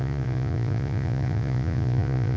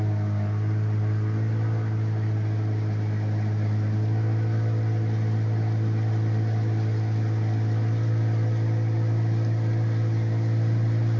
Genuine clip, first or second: second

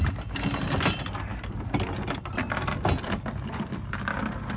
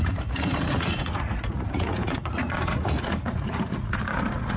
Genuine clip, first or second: first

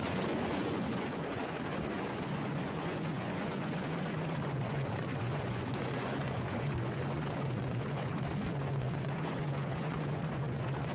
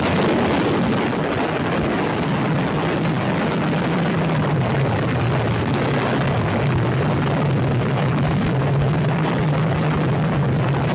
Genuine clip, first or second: second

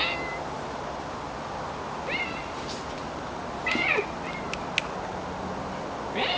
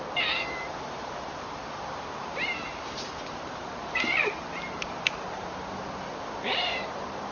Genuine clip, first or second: first